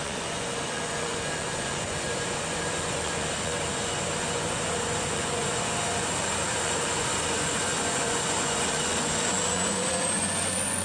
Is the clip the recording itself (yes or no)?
no